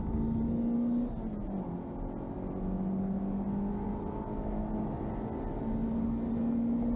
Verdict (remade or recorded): recorded